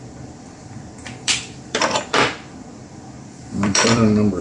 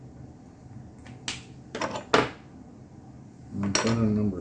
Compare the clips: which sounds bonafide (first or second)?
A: second